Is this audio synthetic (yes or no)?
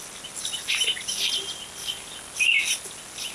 no